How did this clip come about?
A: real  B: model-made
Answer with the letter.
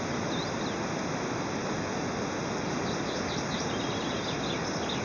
A